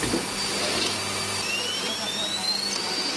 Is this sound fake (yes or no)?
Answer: no